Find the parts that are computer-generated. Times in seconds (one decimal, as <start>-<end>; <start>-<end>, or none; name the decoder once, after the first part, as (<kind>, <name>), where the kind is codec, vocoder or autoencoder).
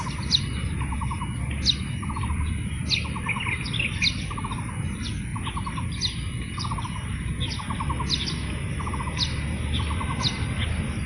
none